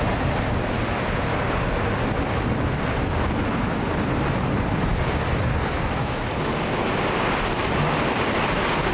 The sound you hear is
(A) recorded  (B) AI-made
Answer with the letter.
A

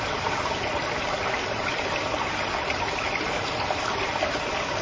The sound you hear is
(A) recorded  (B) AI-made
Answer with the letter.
A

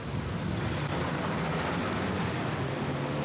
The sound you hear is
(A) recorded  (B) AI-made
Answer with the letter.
A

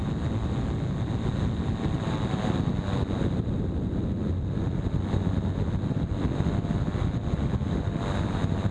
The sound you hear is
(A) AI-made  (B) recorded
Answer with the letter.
B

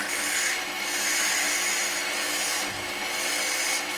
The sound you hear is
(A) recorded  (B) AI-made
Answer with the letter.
A